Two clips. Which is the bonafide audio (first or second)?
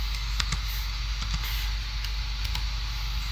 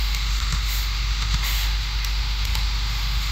first